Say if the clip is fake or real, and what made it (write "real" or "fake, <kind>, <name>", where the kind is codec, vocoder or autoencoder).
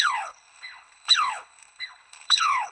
fake, codec, HILCodec